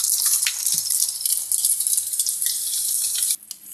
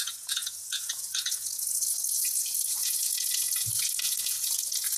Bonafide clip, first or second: first